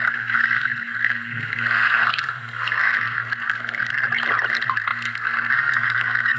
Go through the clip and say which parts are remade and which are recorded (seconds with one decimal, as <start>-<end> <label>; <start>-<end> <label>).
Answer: 0.0-3.9 remade; 3.9-4.5 recorded; 4.5-6.4 remade